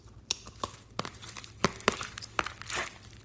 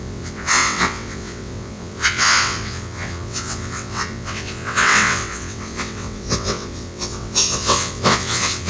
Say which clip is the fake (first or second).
second